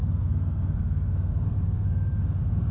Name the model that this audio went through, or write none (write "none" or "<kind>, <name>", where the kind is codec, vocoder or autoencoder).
codec, SNAC